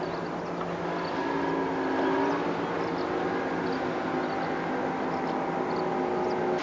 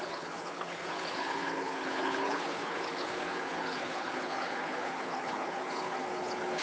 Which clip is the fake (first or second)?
second